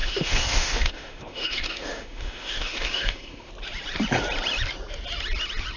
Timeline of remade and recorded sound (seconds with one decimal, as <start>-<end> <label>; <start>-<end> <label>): 0.0-3.5 remade; 3.5-5.8 recorded